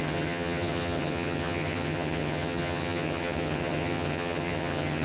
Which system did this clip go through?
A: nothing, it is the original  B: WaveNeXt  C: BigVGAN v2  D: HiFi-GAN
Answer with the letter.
D